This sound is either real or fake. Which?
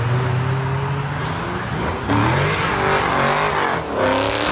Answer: real